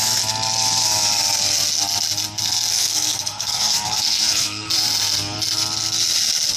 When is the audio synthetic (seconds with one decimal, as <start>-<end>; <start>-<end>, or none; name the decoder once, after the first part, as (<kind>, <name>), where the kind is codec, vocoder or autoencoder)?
2.7-4.7 (codec, SNAC)